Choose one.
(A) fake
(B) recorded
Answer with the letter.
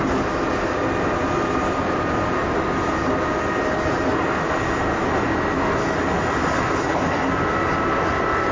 B